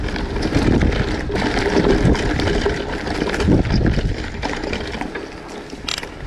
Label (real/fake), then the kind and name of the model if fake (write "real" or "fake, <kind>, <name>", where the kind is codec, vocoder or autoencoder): real